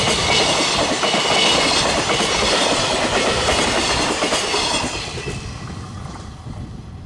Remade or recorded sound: recorded